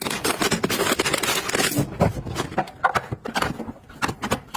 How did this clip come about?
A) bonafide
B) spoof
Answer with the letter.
A